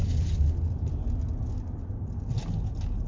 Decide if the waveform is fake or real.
real